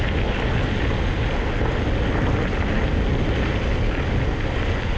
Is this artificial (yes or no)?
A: no